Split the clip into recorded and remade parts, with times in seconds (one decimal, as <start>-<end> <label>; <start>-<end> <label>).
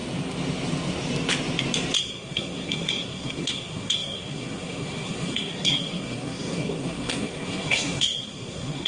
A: 0.0-2.0 recorded; 2.0-8.9 remade